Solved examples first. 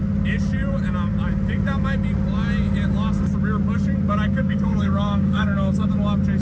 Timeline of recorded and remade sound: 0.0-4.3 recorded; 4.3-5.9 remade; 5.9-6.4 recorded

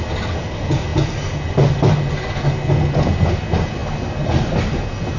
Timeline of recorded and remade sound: 0.0-5.2 recorded

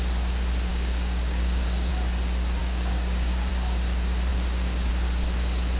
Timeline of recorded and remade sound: 0.0-0.7 recorded; 0.7-1.9 remade; 1.9-2.6 recorded; 2.6-3.5 remade; 3.5-4.3 recorded; 4.3-4.9 remade; 4.9-5.8 recorded

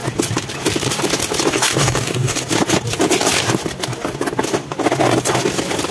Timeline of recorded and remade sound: 0.0-1.5 recorded; 1.5-2.4 remade; 2.4-5.9 recorded

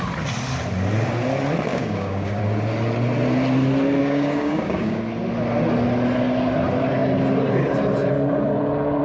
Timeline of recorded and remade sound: 0.0-1.7 recorded; 1.7-2.4 remade; 2.4-4.0 recorded; 4.0-5.0 remade; 5.0-9.0 recorded